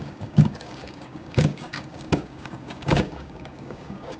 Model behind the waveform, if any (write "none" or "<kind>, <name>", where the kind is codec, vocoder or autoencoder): codec, DAC